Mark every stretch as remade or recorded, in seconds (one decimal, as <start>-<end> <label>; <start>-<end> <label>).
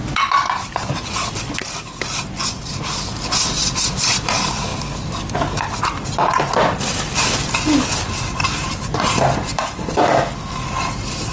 0.0-11.3 recorded